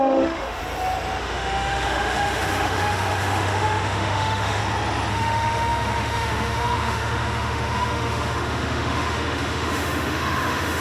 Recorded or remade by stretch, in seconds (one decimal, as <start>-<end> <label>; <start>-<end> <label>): 0.0-0.6 remade; 0.6-1.2 recorded; 1.2-4.6 remade; 4.6-5.1 recorded; 5.1-10.8 remade